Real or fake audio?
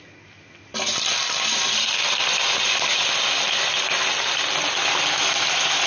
real